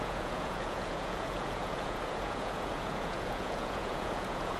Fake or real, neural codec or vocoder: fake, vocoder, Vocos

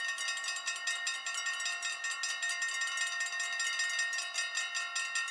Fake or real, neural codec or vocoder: real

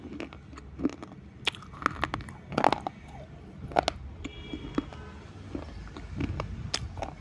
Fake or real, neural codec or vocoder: real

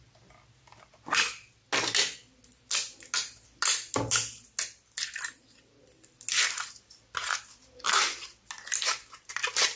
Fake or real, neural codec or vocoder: real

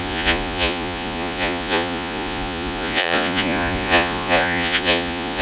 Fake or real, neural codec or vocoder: fake, vocoder, Vocos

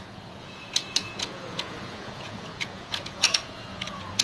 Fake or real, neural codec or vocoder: fake, vocoder, Vocos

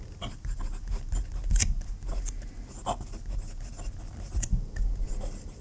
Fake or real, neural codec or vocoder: real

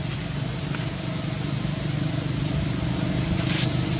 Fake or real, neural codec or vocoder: real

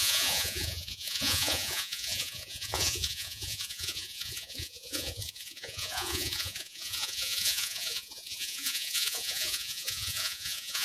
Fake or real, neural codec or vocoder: fake, vocoder, Vocos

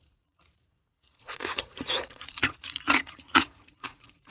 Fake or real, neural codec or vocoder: fake, vocoder, Vocos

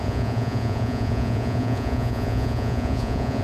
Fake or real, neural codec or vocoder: fake, vocoder, Vocos